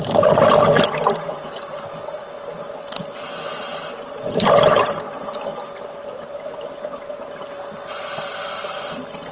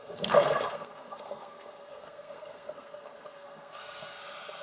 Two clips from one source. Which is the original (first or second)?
first